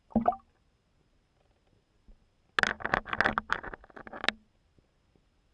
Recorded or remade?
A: recorded